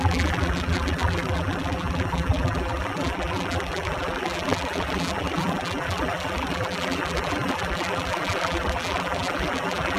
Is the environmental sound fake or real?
fake